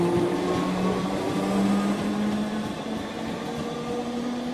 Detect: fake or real real